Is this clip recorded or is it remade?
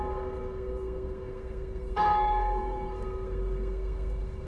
remade